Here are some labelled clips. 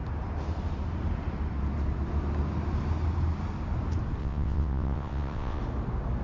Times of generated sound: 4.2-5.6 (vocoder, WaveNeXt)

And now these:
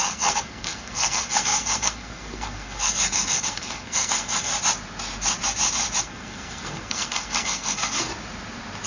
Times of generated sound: 0.0-4.5 (codec, SNAC); 6.0-8.1

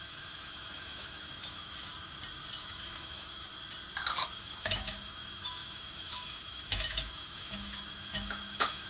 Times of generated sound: 0.0-1.9 (autoencoder, DAC-VAE); 2.6-3.5; 4.4-8.9

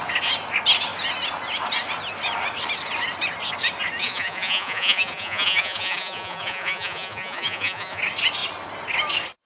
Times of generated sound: 4.0-8.0 (vocoder, Vocos)